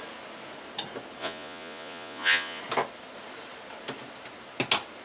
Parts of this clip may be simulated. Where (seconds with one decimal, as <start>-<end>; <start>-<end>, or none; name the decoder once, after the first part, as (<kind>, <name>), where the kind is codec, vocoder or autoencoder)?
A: 1.2-2.6 (vocoder, Vocos)